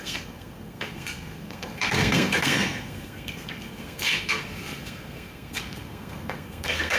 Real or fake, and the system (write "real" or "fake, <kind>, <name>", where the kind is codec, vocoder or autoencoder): fake, codec, SNAC